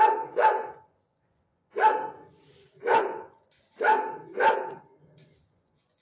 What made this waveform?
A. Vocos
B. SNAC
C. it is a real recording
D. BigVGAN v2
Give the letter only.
A